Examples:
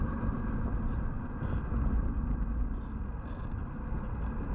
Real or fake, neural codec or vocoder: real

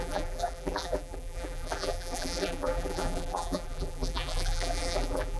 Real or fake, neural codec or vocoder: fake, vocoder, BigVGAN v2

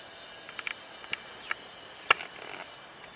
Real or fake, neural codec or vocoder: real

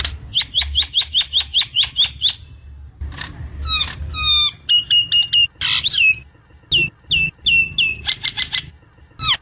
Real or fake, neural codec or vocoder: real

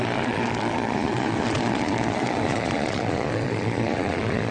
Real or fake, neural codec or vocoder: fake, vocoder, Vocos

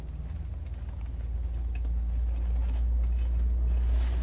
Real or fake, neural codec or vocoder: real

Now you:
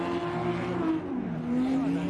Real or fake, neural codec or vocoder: real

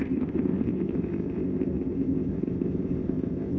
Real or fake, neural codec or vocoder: fake, codec, ZipCodec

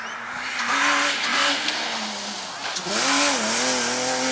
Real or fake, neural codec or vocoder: real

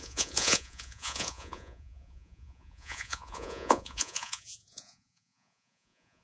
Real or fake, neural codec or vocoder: fake, vocoder, Vocos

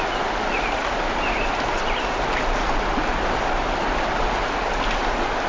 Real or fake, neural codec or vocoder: real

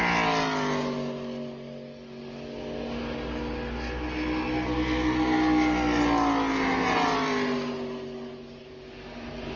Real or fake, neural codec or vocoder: real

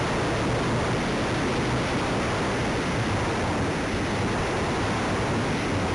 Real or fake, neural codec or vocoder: real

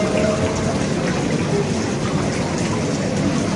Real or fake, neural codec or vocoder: real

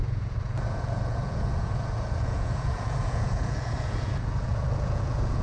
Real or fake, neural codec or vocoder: fake, vocoder, Vocos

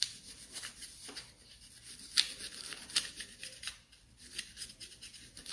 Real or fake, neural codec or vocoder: real